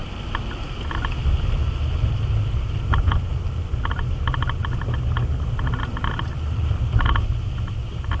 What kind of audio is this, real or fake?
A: real